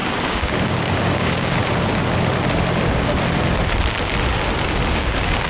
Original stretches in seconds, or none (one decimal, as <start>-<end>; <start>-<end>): 1.6-4.9